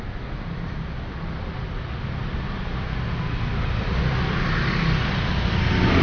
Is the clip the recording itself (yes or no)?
yes